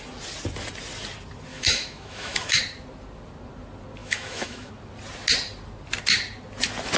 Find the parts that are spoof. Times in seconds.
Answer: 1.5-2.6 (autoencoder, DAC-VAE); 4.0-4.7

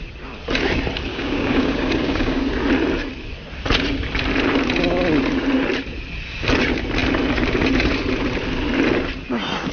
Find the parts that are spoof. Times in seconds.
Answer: 1.1-2.4 (codec, DAC)

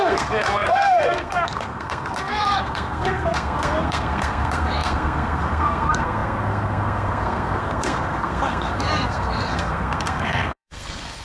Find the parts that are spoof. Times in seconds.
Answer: 0.0-11.2 (codec, SNAC)

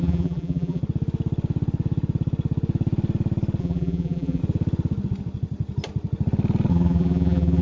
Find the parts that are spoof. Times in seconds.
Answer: 0.0-0.8 (vocoder, BigVGAN v2); 3.6-4.4; 6.7-7.6

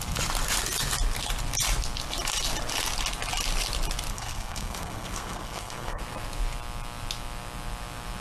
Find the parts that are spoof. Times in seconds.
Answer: 4.1-6.0 (codec, SNAC)

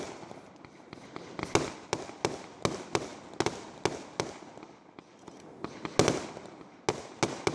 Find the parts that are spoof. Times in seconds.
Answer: none

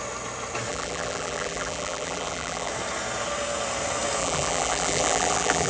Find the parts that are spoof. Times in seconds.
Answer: 0.7-2.7 (vocoder, BigVGAN v2); 4.2-5.7